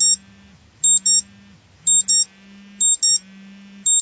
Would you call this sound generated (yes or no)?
no